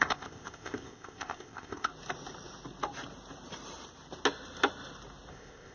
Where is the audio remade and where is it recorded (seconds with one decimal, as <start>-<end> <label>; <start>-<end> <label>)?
0.0-1.9 remade; 1.9-5.3 recorded; 5.3-5.7 remade